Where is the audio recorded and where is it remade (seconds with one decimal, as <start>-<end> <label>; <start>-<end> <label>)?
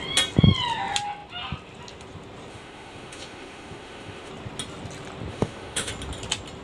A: 0.0-2.5 recorded; 2.5-4.3 remade; 4.3-5.3 recorded; 5.3-5.9 remade; 5.9-6.6 recorded